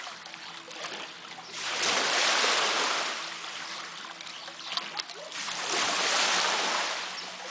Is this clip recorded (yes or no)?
yes